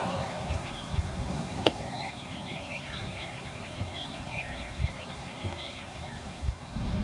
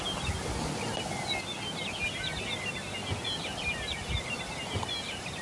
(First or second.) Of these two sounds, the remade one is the first